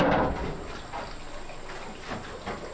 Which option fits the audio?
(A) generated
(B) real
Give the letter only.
B